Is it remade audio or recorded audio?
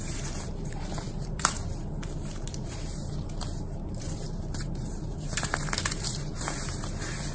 remade